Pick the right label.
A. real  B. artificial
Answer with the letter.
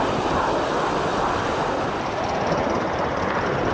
A